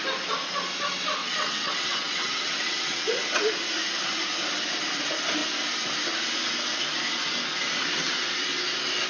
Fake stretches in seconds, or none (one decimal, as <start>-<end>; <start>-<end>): 1.2-3.4